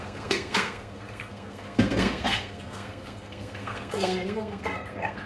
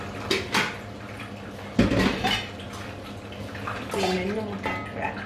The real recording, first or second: second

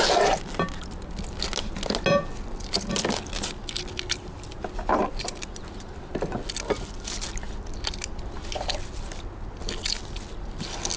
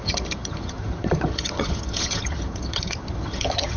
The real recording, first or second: first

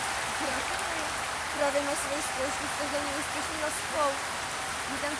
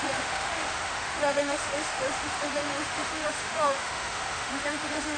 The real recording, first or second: first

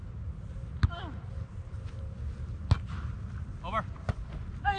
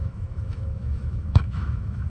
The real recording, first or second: first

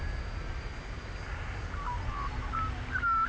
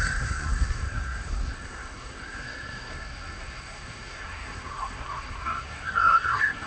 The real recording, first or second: first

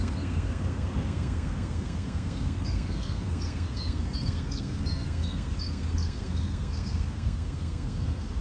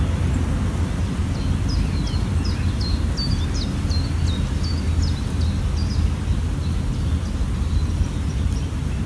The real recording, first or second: second